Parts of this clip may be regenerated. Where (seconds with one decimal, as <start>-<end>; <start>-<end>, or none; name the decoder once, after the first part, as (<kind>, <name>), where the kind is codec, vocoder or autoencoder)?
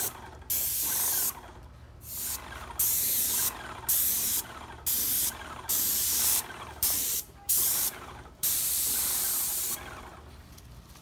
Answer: 5.4-9.3 (vocoder, BigVGAN v2)